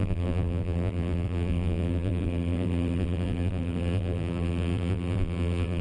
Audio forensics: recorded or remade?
remade